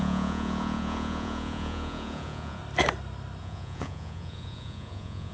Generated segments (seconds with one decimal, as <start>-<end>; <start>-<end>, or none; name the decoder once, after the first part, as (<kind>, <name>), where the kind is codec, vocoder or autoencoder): 0.0-2.6 (vocoder, Vocos); 3.4-5.3